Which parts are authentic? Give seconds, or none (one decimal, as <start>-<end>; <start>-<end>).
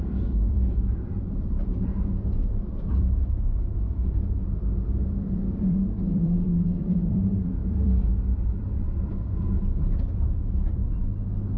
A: none